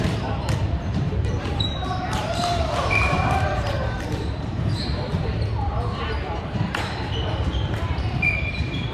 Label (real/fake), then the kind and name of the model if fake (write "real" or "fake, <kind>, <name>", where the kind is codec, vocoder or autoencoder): fake, vocoder, BigVGAN v2